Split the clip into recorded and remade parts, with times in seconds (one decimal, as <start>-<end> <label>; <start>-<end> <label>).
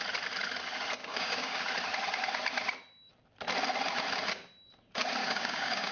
0.0-1.0 recorded; 1.0-1.6 remade; 1.6-5.2 recorded; 5.2-5.9 remade